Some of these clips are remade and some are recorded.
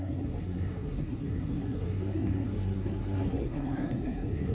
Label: remade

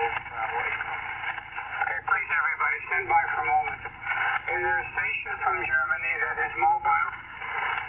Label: recorded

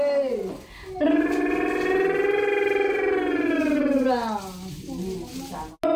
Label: recorded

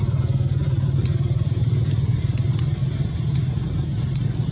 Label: recorded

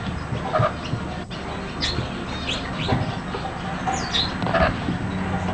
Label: recorded